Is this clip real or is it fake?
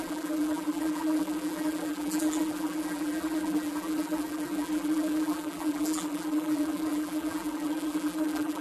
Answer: fake